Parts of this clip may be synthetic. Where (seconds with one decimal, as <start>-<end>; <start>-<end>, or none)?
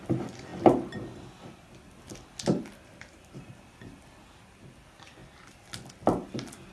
none